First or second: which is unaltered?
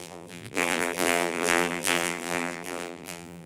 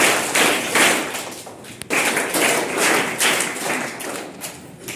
second